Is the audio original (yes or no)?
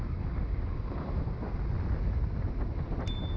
yes